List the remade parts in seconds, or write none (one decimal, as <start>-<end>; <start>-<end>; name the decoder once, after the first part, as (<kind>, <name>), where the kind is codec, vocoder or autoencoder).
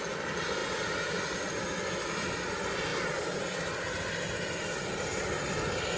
none